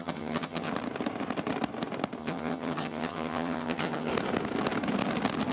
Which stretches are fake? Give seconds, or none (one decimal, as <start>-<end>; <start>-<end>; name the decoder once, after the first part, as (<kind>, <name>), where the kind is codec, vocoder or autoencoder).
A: 0.0-0.7 (vocoder, HiFi-GAN); 2.2-4.1